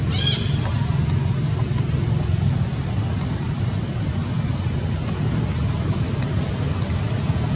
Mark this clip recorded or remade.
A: recorded